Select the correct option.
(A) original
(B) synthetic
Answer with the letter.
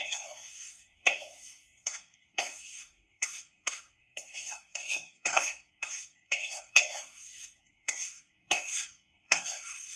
B